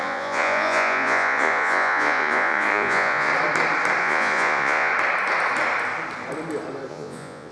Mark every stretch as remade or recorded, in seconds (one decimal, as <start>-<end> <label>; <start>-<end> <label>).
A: 0.0-3.3 remade; 3.3-4.0 recorded; 4.0-4.9 remade; 4.9-6.9 recorded; 6.9-7.5 remade